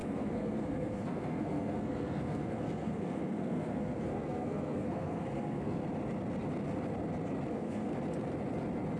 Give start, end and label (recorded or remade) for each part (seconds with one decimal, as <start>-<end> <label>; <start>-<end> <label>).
0.0-5.8 remade; 5.8-7.5 recorded; 7.5-7.9 remade; 7.9-9.0 recorded